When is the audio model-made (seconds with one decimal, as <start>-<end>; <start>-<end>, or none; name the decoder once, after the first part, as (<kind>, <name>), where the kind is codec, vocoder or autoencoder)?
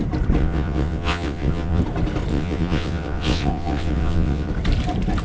0.4-1.8 (vocoder, WaveNeXt); 2.3-4.5